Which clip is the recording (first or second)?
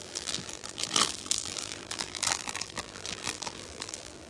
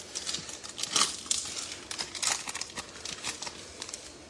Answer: second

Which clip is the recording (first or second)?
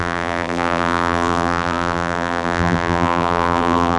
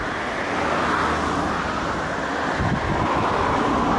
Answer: second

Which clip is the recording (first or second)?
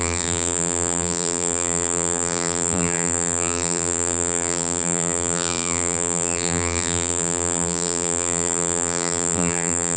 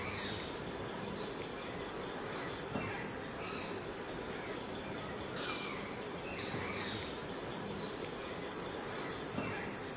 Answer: second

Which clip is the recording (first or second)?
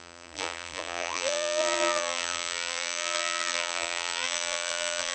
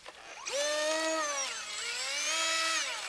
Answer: second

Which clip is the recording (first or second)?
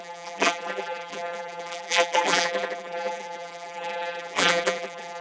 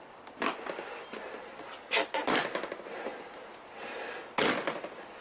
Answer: second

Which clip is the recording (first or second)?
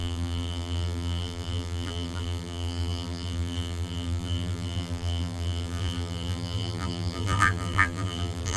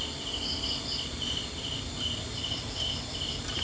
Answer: second